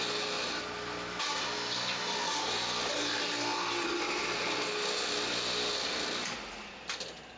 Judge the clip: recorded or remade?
recorded